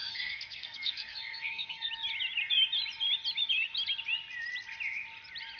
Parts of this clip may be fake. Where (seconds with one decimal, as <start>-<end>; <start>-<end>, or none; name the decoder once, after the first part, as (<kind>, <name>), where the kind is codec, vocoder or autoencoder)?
0.0-1.9 (codec, SNAC)